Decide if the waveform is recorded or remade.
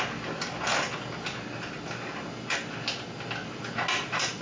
recorded